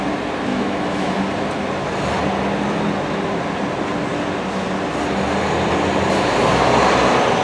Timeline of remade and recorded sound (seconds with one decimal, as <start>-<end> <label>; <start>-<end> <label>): 0.0-0.5 recorded; 0.5-1.2 remade; 1.2-7.4 recorded